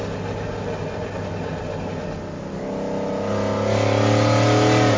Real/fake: real